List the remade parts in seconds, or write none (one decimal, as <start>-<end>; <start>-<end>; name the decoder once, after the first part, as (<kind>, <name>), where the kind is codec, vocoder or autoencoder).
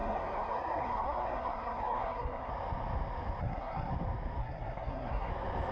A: 0.0-2.5 (codec, SNAC); 3.4-3.9; 4.4-5.3